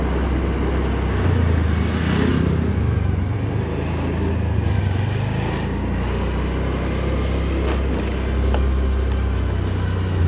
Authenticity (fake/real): real